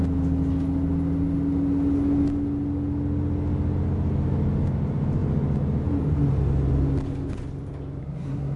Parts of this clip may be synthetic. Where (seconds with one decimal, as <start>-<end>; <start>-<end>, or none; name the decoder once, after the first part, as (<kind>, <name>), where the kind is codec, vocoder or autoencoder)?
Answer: 8.0-8.6 (codec, SNAC)